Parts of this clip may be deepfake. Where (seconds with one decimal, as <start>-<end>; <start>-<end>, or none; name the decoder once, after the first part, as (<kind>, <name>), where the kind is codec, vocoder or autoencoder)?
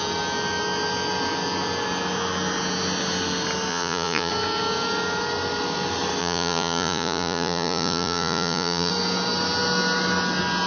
3.7-4.3 (vocoder, Vocos); 6.2-8.9